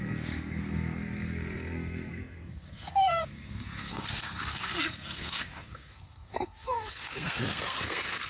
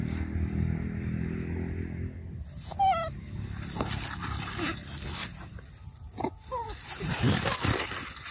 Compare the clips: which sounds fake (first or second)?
first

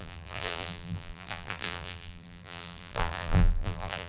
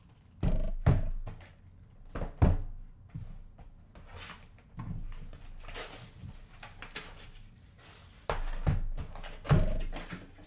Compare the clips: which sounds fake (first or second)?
first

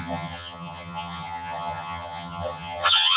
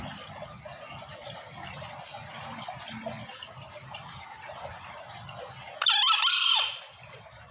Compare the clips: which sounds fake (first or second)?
first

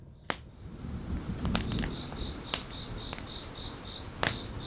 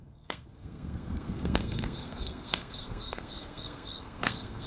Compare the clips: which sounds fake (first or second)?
second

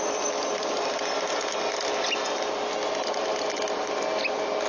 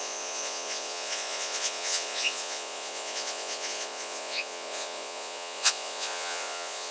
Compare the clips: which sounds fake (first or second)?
second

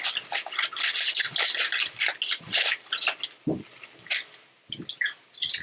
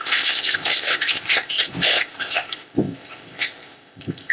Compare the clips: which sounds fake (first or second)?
second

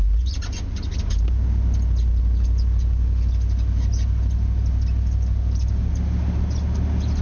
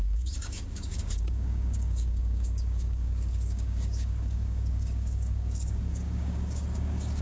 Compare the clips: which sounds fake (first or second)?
second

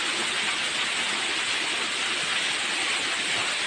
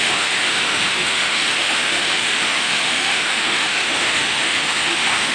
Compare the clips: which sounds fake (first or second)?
second